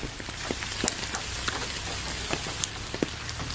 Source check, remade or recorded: recorded